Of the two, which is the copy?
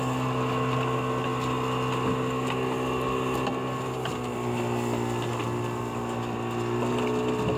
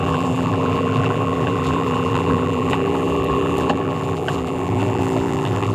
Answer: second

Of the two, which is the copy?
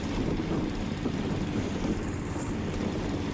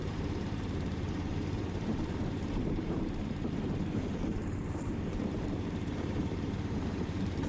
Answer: second